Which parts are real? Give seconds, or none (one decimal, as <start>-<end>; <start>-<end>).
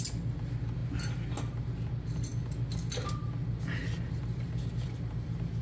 0.0-5.6